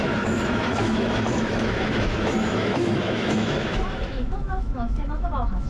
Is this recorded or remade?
remade